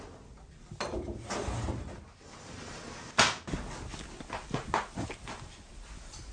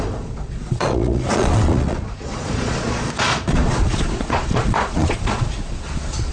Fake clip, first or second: second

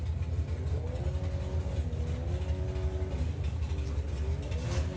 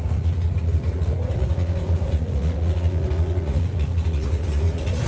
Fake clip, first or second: second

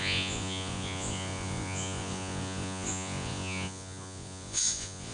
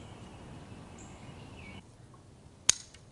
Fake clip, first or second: first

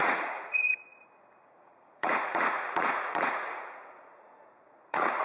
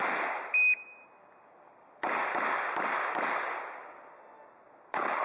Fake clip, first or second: first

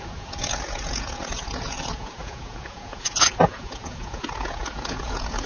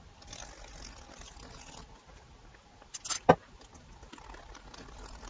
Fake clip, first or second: first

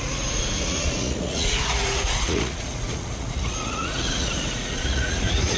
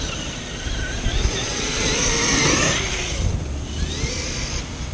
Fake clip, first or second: first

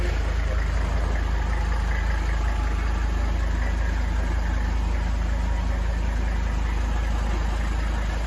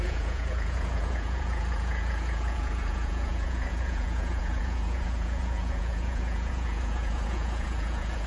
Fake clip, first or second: second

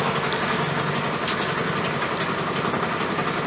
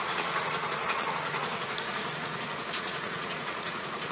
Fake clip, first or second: second